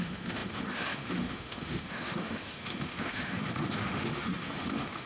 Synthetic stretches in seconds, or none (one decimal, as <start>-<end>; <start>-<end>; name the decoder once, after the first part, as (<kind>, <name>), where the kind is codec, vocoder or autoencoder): 0.0-5.1 (autoencoder, DAC-VAE)